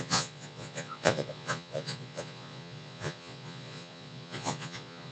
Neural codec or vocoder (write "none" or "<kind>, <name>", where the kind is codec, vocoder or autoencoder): vocoder, Vocos